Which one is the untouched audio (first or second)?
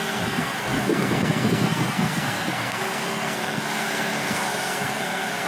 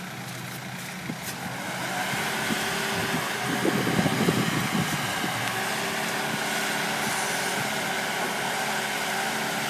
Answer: second